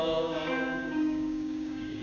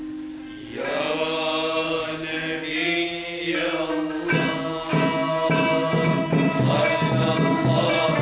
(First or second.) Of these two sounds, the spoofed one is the first